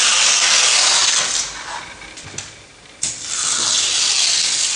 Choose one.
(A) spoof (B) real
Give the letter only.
B